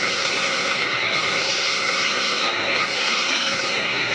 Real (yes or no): no